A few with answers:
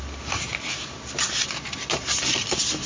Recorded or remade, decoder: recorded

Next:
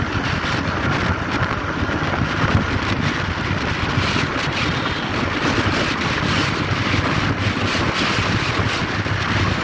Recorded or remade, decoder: recorded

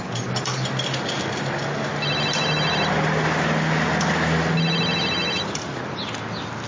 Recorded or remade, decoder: recorded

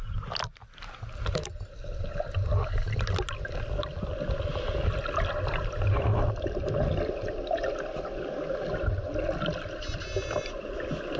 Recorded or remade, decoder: recorded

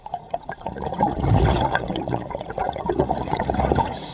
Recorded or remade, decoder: remade, vocoder, Vocos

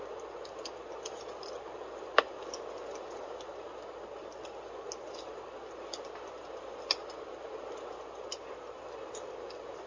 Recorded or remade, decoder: recorded